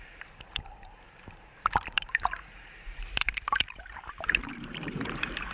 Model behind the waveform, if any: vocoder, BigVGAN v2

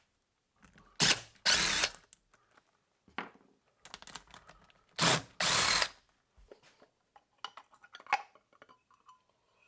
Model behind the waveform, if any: none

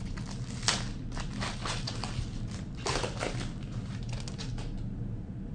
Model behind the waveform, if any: none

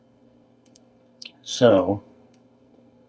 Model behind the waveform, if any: codec, SNAC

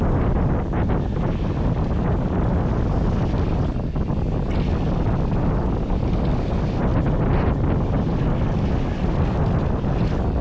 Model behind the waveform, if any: none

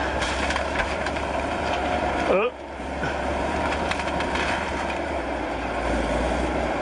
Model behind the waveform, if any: vocoder, BigVGAN v2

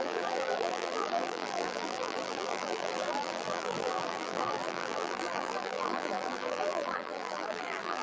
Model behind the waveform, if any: vocoder, BigVGAN v2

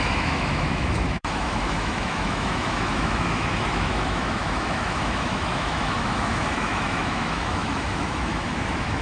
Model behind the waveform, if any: autoencoder, DAC-VAE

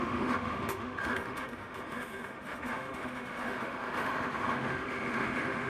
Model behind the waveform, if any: autoencoder, DAC-VAE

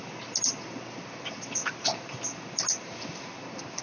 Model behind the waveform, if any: none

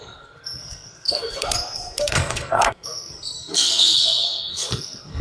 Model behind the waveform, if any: codec, SNAC